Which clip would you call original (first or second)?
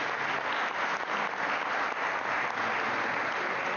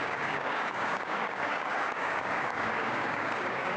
first